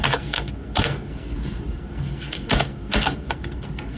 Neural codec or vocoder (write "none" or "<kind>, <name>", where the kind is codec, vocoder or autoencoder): codec, SNAC